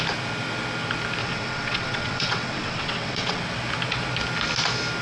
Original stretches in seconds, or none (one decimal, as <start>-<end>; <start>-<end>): 0.0-1.2; 3.4-5.0